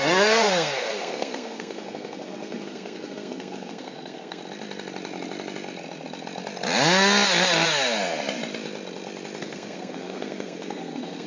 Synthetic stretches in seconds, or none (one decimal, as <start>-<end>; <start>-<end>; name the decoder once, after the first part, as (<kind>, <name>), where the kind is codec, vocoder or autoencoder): 0.0-4.4 (codec, SNAC); 9.4-11.3